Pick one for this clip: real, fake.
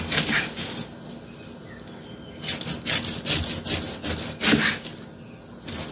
real